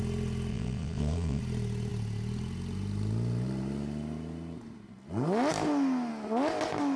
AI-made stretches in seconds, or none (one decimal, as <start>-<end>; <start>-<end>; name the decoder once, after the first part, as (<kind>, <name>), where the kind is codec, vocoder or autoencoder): 0.5-1.4 (vocoder, Vocos)